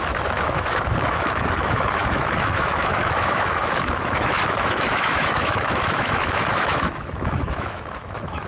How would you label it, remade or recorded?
remade